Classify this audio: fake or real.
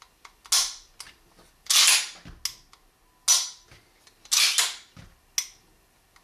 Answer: real